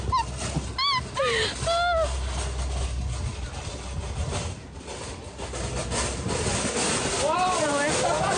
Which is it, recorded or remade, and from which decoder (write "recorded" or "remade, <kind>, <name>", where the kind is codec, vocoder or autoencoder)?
recorded